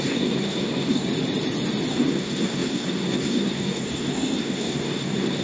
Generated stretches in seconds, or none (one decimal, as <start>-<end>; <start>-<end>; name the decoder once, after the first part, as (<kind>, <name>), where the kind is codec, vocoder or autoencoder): 0.0-1.1 (codec, SNAC); 1.9-5.4